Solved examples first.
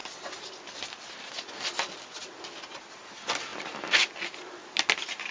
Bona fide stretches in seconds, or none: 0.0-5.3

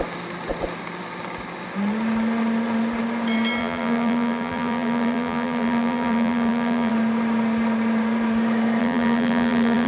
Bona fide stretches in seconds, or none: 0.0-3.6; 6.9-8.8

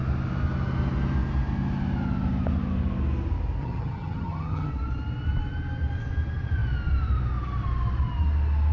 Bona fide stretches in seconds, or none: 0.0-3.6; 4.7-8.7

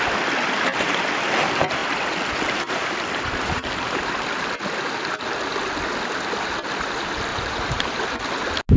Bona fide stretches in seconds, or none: 0.0-7.3; 8.2-8.8

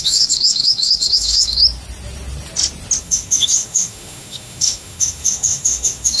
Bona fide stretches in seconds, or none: 1.6-3.0

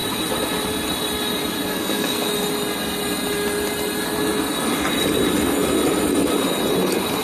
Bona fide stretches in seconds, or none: 0.0-1.7; 2.3-7.2